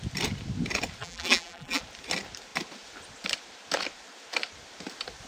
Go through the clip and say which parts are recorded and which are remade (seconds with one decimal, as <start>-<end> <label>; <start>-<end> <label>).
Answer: 0.0-1.0 recorded; 1.0-1.8 remade; 1.8-5.3 recorded